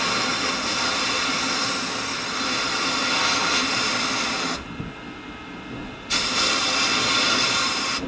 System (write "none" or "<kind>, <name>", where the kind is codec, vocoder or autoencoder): none